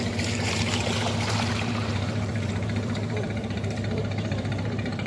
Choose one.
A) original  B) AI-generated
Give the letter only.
B